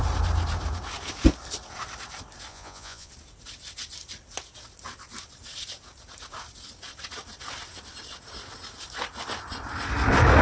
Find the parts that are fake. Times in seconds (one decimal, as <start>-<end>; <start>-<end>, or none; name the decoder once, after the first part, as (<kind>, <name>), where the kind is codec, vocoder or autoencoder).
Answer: 2.5-3.1 (vocoder, Vocos)